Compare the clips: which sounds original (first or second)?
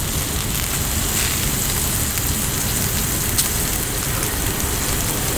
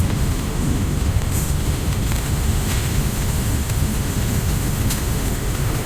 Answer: first